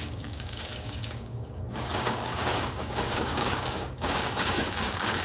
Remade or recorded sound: remade